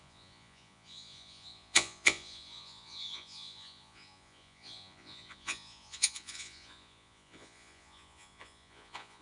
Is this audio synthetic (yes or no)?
yes